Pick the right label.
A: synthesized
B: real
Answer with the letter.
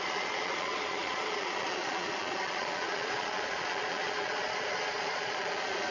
A